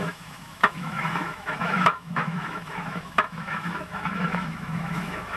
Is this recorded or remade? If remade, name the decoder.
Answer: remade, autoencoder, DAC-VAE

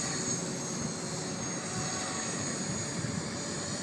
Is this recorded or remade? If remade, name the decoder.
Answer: recorded